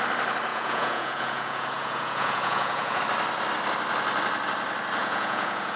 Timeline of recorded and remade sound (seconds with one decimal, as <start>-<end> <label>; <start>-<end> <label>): 0.0-0.5 recorded; 0.5-3.0 remade; 3.0-5.0 recorded; 5.0-5.8 remade